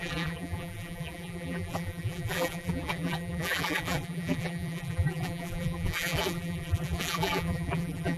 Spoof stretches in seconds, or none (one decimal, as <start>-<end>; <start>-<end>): 0.0-8.2